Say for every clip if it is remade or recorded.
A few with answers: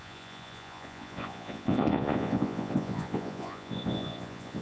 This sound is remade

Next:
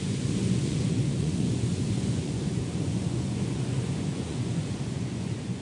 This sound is remade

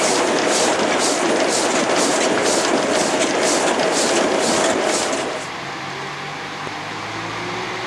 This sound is recorded